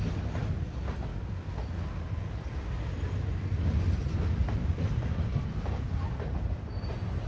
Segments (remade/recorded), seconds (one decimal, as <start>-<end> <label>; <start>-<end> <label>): 0.0-4.4 recorded; 4.4-7.3 remade

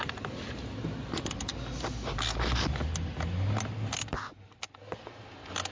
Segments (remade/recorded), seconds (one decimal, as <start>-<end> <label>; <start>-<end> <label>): 0.0-5.7 recorded

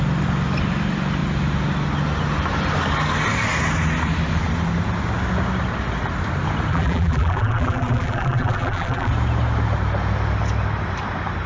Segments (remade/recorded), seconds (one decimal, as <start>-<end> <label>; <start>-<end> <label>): 0.0-6.7 recorded; 6.7-9.1 remade; 9.1-11.5 recorded

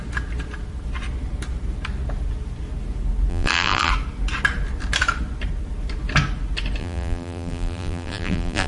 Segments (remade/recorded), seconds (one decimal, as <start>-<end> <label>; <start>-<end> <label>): 0.0-3.3 recorded; 3.3-3.9 remade; 3.9-6.8 recorded; 6.8-8.7 remade

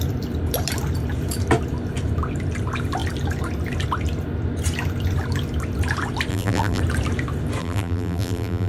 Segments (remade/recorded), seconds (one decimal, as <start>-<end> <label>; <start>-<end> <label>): 0.0-6.3 recorded; 6.3-6.8 remade; 6.8-7.6 recorded; 7.6-8.7 remade